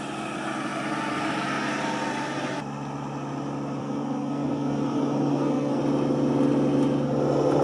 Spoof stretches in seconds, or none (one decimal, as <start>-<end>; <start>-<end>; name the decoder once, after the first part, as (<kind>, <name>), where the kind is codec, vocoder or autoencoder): 3.8-5.8 (codec, SNAC)